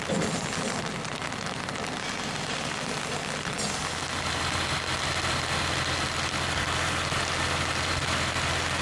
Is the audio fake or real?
real